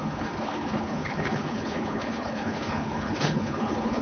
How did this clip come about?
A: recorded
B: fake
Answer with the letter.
B